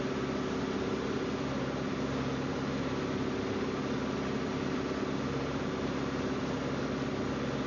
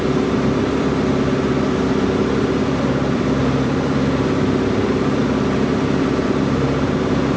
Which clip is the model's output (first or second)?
second